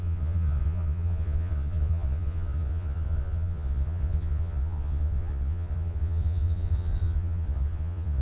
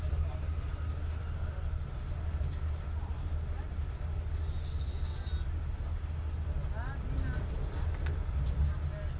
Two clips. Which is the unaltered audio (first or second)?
second